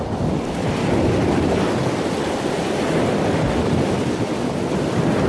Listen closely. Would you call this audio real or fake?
real